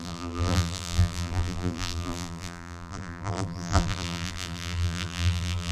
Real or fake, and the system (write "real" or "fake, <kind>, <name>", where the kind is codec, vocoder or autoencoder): fake, vocoder, BigVGAN v2